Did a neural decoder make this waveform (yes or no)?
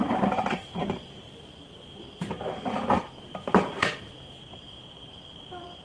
yes